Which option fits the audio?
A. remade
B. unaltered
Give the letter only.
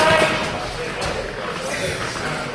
B